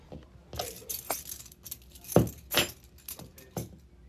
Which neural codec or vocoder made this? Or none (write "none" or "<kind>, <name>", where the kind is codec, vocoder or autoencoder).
none